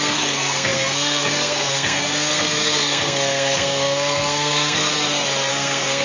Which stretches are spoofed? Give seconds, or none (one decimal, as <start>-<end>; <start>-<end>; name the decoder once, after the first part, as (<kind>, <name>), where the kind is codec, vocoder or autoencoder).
0.0-4.9 (codec, SNAC); 5.5-6.0